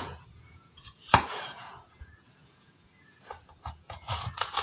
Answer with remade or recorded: remade